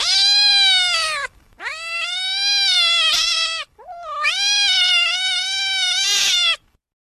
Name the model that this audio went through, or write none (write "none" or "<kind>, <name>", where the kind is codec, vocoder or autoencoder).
none